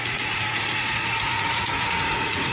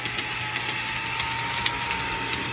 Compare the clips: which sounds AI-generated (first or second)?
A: first